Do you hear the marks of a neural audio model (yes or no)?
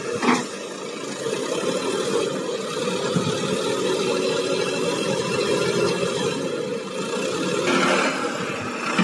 no